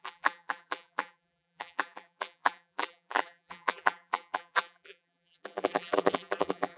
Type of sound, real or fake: fake